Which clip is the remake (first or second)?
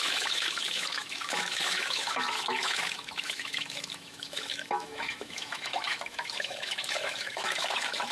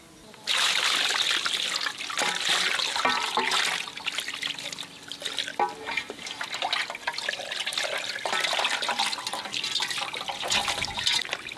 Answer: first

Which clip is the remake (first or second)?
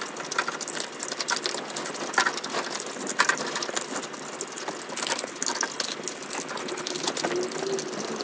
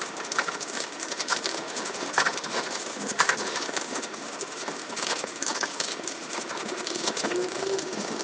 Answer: second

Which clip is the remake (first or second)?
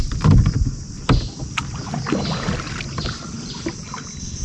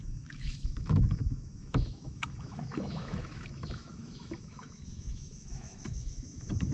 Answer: second